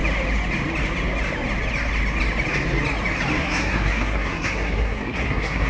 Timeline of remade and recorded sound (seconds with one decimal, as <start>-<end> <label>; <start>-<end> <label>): 0.0-3.4 recorded; 3.4-5.7 remade

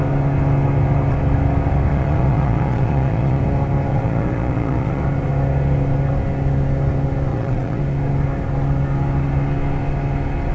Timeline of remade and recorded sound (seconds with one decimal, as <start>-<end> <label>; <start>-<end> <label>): 0.0-1.9 recorded; 1.9-3.4 remade; 3.4-3.9 recorded; 3.9-5.0 remade; 5.0-7.3 recorded; 7.3-7.8 remade; 7.8-10.5 recorded

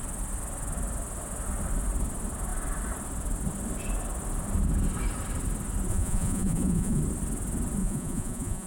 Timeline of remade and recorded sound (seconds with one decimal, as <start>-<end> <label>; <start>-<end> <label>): 0.0-5.9 recorded; 5.9-7.0 remade; 7.0-7.8 recorded; 7.8-8.7 remade